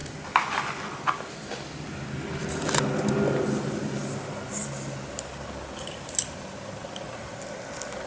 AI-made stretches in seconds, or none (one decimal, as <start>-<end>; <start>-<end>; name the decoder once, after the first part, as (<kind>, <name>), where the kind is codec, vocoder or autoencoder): none